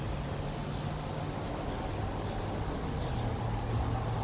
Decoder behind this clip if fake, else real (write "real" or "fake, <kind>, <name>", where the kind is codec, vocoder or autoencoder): real